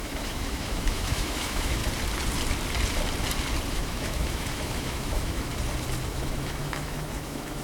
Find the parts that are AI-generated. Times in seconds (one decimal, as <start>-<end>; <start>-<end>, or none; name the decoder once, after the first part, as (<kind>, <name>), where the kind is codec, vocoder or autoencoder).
0.0-1.8 (autoencoder, DAC-VAE); 3.7-5.5; 6.1-7.6